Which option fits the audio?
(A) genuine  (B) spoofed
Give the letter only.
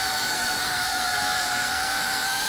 B